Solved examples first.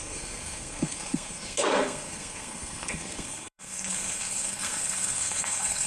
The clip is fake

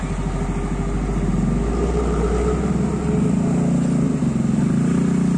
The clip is real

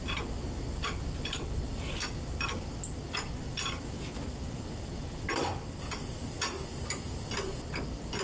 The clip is real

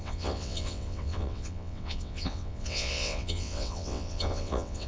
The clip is fake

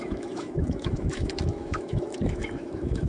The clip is fake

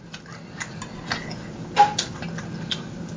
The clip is real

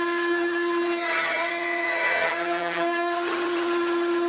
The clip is fake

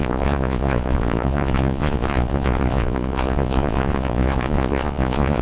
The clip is fake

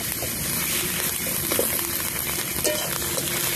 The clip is real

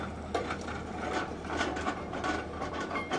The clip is fake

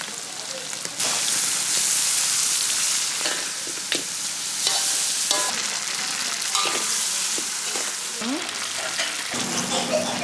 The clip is real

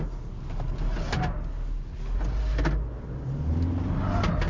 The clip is real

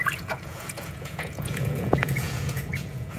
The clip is fake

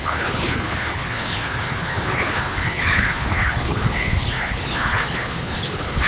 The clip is fake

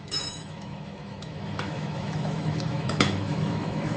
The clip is fake